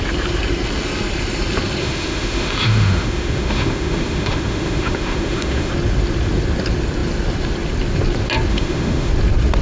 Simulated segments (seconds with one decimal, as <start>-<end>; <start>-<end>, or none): 1.8-5.7; 8.5-9.1